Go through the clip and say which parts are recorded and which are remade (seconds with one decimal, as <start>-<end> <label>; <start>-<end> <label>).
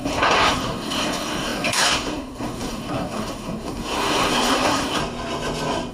0.0-5.0 remade; 5.0-5.9 recorded